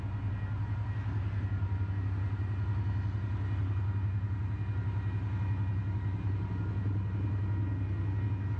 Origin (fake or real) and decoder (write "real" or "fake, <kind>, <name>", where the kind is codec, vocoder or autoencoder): real